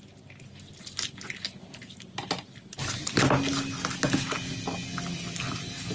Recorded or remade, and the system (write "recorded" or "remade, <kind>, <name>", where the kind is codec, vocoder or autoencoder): recorded